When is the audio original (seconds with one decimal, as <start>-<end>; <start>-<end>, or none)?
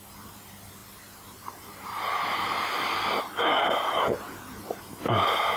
0.0-5.6